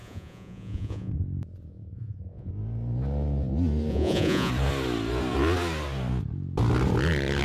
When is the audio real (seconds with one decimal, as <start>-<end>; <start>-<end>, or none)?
1.1-1.7; 2.5-3.9; 4.5-7.4